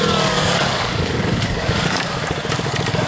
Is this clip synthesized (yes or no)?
yes